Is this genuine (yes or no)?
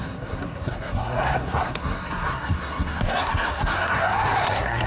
no